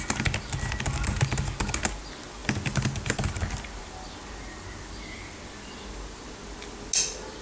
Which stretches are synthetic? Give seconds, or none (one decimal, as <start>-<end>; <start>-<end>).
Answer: none